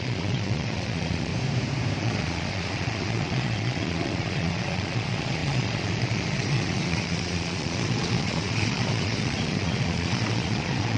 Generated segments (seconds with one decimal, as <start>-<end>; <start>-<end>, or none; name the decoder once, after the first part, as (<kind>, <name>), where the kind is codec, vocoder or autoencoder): 0.0-1.3 (vocoder, Vocos); 2.0-11.0